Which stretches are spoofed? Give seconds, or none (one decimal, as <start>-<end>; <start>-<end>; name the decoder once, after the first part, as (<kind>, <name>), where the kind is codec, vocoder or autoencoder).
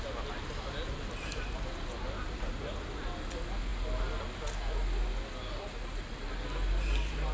none